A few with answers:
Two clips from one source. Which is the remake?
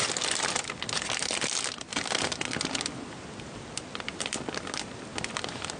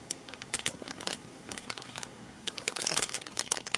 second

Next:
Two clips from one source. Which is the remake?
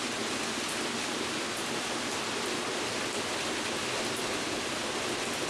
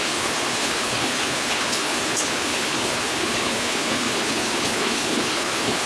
second